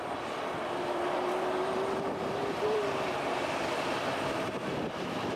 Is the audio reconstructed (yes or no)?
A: yes